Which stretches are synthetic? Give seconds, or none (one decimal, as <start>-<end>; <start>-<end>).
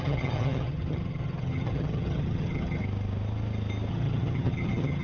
0.0-2.8; 3.9-5.0